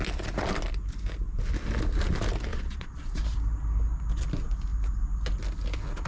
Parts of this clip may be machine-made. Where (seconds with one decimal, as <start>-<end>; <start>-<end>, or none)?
2.5-3.2